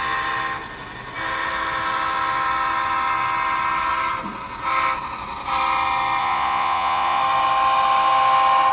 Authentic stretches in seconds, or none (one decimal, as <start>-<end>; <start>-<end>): 0.0-6.2; 7.2-8.7